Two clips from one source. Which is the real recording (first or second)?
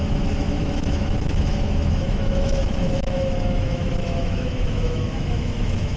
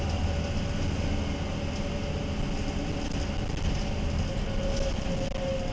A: second